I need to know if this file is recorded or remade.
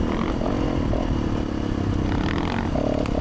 recorded